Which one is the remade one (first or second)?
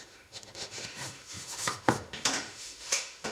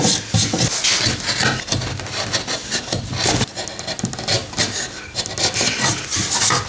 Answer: first